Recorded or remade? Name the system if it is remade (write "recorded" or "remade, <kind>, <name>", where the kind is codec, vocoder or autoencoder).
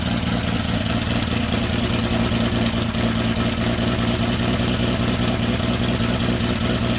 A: recorded